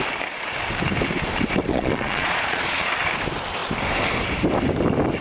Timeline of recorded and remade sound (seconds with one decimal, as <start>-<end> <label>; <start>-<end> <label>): 0.0-1.7 recorded; 1.7-2.9 remade; 2.9-5.2 recorded